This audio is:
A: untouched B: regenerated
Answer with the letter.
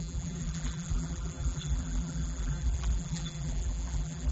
B